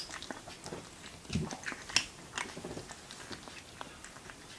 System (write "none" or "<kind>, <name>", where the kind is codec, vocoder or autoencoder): none